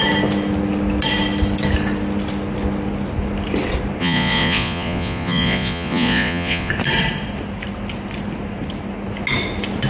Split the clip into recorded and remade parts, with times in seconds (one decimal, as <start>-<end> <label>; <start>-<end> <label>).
0.0-4.0 recorded; 4.0-6.7 remade; 6.7-9.9 recorded